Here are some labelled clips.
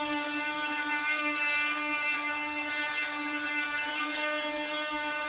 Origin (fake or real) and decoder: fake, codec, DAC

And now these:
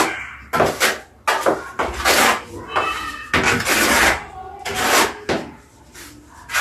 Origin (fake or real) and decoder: real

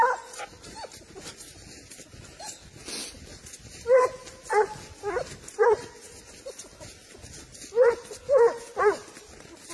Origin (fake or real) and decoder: real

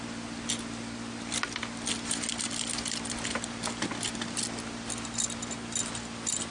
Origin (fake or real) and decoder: real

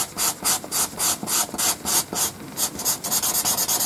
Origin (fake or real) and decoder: real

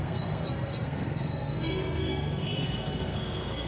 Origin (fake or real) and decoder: fake, codec, SNAC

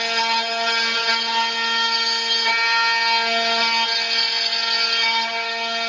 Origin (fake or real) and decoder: real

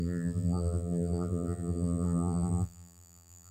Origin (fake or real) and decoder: fake, vocoder, BigVGAN v2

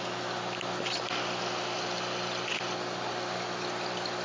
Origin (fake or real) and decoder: real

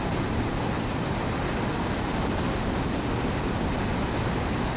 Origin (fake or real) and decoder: real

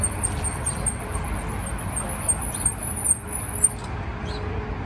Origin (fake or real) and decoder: real